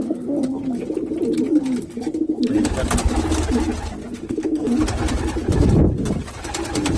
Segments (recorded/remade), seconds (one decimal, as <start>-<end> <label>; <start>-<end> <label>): 0.0-4.2 recorded; 4.2-4.7 remade; 4.7-7.0 recorded